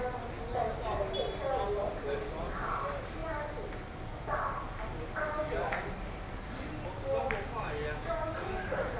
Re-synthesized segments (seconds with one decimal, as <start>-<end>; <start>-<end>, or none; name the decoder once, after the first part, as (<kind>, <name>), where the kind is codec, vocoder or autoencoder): none

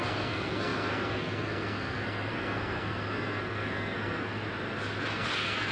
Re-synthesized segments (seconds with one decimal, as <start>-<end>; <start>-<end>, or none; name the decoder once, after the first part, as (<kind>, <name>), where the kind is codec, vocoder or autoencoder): 0.0-4.4 (codec, SNAC); 5.0-5.7

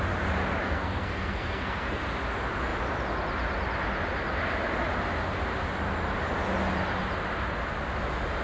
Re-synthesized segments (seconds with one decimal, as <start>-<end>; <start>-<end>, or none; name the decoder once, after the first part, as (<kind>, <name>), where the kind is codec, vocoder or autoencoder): 0.6-2.0 (codec, SNAC)

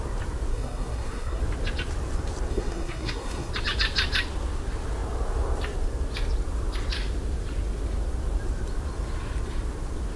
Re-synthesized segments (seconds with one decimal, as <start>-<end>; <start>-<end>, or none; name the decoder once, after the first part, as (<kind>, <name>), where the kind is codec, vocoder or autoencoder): 0.5-1.4 (codec, SNAC); 2.5-3.5